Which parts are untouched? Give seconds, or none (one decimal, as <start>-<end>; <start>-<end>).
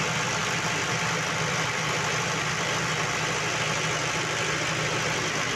0.0-0.4; 2.9-4.0; 4.6-5.6